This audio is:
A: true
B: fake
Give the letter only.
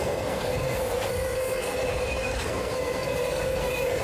B